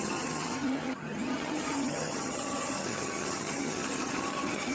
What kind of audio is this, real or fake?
fake